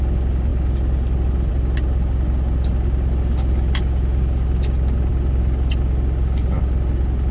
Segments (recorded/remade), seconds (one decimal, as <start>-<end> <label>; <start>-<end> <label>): 0.0-7.3 recorded